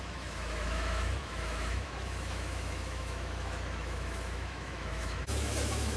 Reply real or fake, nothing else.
fake